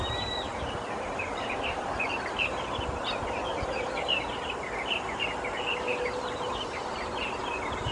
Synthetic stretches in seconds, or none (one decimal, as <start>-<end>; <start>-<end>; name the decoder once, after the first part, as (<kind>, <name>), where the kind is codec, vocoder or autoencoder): 0.5-3.5 (vocoder, BigVGAN v2)